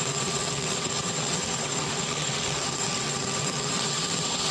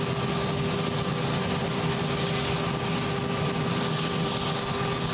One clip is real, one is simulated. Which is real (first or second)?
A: second